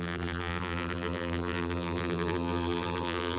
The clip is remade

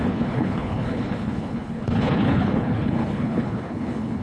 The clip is remade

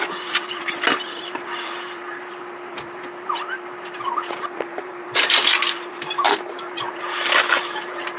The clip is remade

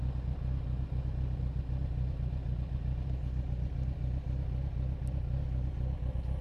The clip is recorded